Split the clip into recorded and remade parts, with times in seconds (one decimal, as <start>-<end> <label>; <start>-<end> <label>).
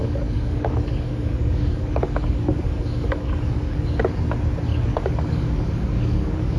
0.0-4.0 remade; 4.0-4.7 recorded; 4.7-6.6 remade